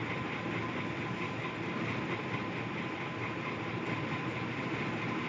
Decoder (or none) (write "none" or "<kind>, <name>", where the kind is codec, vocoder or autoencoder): none